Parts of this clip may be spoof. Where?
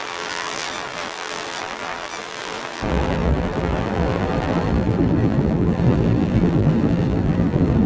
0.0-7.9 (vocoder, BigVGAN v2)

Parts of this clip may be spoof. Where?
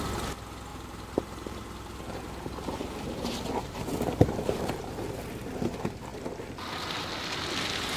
0.7-5.5 (vocoder, BigVGAN v2)